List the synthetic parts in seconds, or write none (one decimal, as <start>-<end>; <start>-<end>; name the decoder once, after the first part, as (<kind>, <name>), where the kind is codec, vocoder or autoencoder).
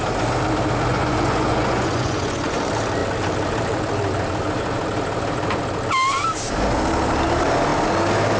0.9-2.6 (vocoder, Vocos)